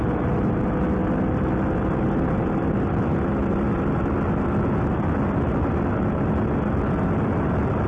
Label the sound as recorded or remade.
recorded